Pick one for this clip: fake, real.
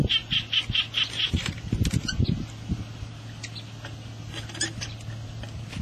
real